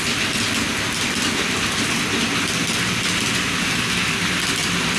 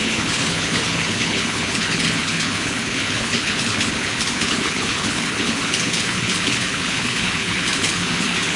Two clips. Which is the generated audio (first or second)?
second